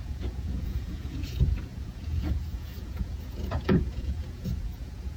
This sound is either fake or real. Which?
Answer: fake